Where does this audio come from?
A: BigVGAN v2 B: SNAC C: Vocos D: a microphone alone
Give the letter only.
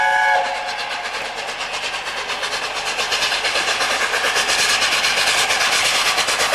D